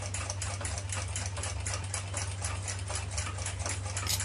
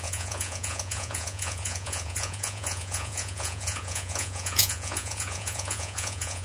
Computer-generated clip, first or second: second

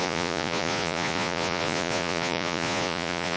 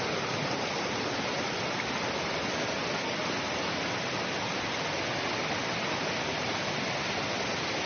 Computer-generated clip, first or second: first